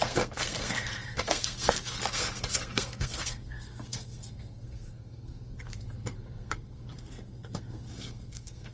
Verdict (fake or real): fake